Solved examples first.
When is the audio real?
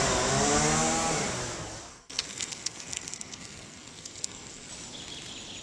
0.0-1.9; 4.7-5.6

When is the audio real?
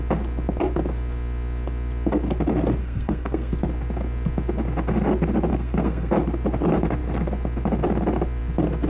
0.0-2.8; 3.5-5.5; 6.1-8.9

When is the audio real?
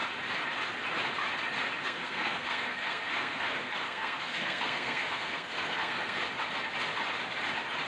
0.0-1.8; 6.2-7.9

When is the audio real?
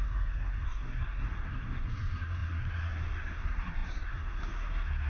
none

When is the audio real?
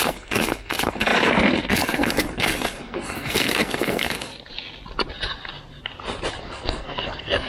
4.3-6.4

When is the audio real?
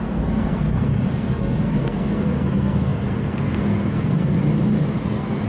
4.4-5.0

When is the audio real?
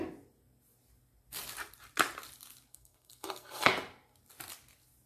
0.0-2.7; 3.7-5.1